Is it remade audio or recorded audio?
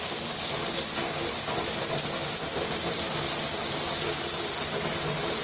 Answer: recorded